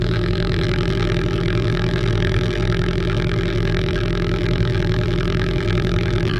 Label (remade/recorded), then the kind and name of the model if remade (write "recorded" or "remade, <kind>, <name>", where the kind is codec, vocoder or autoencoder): remade, vocoder, BigVGAN v2